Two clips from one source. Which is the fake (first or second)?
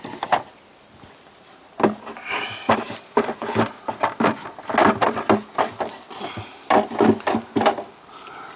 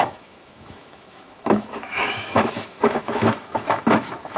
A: second